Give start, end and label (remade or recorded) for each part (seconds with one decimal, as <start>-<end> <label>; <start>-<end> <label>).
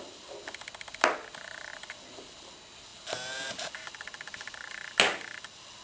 0.0-5.8 recorded